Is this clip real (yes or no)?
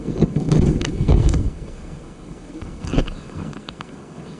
no